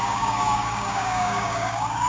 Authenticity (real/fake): fake